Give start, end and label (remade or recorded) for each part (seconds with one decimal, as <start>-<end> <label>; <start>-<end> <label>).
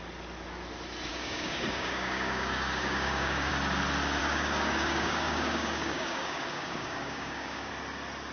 0.0-1.1 recorded; 1.1-3.5 remade; 3.5-4.2 recorded; 4.2-7.7 remade; 7.7-8.3 recorded